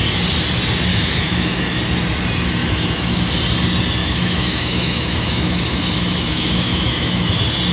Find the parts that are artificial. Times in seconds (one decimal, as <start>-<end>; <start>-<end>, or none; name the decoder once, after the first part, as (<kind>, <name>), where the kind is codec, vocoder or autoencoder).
0.9-1.8 (autoencoder, DAC-VAE); 2.6-3.3; 4.0-7.3